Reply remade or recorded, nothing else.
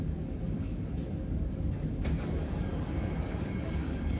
remade